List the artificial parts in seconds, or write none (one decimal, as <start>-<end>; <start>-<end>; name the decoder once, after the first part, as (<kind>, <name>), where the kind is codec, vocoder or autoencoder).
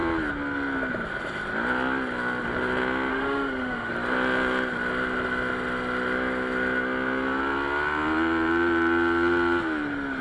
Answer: 3.1-3.9 (autoencoder, DAC-VAE)